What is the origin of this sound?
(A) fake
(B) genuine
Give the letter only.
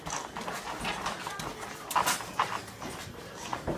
B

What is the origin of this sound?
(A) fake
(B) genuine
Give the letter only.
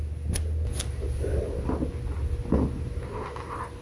B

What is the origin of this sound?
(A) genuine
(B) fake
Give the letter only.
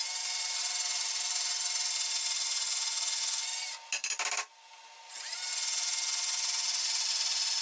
A